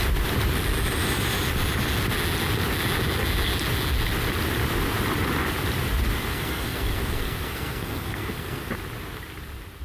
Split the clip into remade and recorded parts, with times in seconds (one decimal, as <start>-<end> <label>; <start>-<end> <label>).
0.0-6.3 recorded; 6.3-8.7 remade; 8.7-9.8 recorded